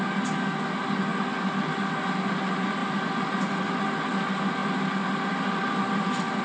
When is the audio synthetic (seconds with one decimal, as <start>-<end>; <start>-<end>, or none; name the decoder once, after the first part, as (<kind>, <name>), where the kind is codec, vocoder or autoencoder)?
2.8-3.8 (vocoder, BigVGAN v2); 4.6-6.4